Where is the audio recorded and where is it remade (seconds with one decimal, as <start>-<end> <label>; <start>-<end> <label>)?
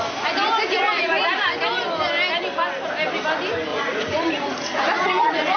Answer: 0.0-3.7 recorded; 3.7-5.6 remade